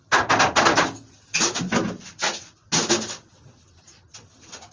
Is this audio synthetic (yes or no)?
no